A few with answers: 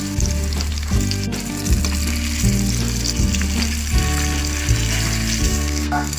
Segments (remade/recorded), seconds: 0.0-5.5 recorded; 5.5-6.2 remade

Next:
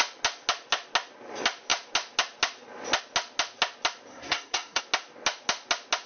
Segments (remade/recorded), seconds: 0.0-4.1 recorded; 4.1-4.8 remade; 4.8-6.1 recorded

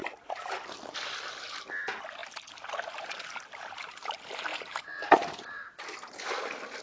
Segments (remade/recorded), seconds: 0.0-0.7 remade; 0.7-4.5 recorded; 4.5-5.8 remade; 5.8-6.8 recorded

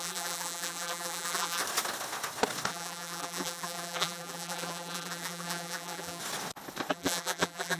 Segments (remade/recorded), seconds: 0.0-1.6 remade; 1.6-2.7 recorded; 2.7-6.2 remade; 6.2-6.9 recorded; 6.9-7.8 remade

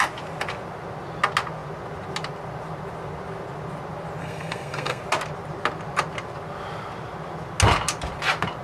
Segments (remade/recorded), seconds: 0.0-4.2 recorded; 4.2-5.0 remade; 5.0-8.6 recorded

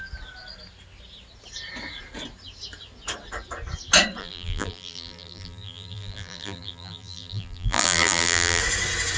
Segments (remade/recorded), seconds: 0.0-4.2 recorded; 4.2-8.6 remade; 8.6-9.2 recorded